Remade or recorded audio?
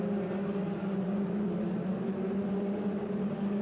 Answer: recorded